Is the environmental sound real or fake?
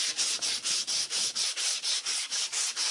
real